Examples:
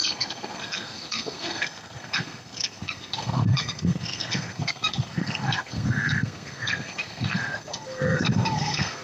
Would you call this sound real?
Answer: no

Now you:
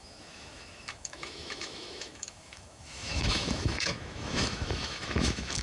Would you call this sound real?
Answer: no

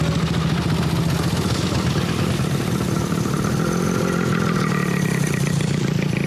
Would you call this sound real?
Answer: yes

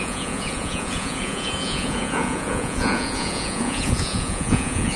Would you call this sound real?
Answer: no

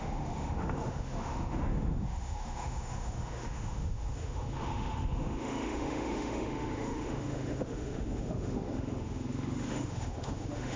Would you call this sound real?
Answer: no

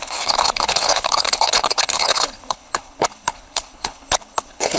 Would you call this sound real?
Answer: no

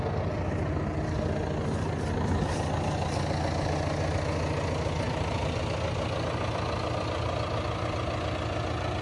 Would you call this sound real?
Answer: yes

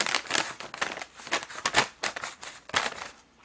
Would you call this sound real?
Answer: yes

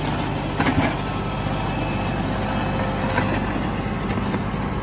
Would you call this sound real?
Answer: yes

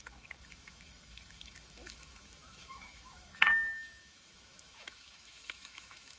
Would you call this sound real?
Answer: no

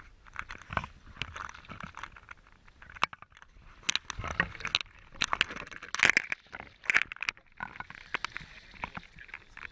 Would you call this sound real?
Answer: yes